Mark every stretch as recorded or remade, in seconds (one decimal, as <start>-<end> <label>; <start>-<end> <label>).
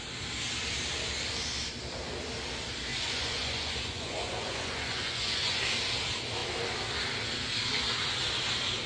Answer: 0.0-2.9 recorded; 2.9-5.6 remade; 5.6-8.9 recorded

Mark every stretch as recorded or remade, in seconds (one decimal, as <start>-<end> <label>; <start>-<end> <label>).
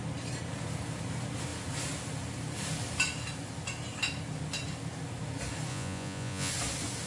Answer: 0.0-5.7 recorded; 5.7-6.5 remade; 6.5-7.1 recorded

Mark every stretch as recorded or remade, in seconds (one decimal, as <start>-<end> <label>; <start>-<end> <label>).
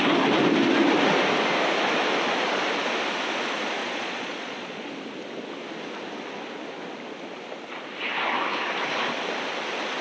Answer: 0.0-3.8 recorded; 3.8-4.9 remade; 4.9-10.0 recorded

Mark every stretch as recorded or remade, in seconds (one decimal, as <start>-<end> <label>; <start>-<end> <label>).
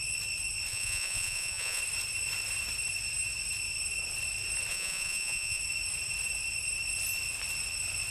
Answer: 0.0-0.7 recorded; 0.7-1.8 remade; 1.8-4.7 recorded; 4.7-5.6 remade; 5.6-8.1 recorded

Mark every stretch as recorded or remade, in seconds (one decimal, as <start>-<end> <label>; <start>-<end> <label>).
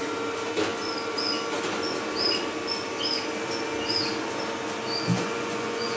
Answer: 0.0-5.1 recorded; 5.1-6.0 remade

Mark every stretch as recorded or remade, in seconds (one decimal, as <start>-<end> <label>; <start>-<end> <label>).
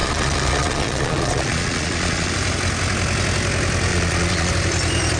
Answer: 0.0-2.3 remade; 2.3-3.9 recorded; 3.9-4.5 remade; 4.5-5.2 recorded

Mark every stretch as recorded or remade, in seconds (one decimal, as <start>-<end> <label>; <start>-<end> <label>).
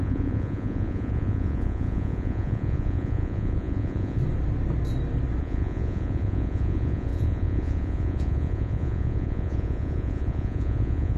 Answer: 0.0-4.2 remade; 4.2-5.4 recorded; 5.4-11.2 remade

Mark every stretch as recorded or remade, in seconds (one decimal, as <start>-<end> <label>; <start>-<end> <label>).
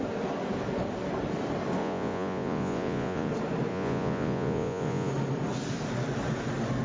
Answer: 0.0-1.8 recorded; 1.8-3.3 remade; 3.3-3.7 recorded; 3.7-5.1 remade; 5.1-6.8 recorded